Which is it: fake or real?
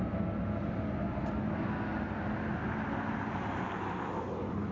real